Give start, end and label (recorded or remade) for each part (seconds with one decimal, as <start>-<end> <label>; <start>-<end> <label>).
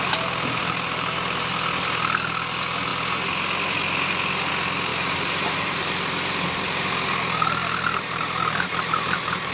0.0-0.6 recorded; 0.6-1.5 remade; 1.5-4.9 recorded; 4.9-6.9 remade; 6.9-7.6 recorded; 7.6-9.5 remade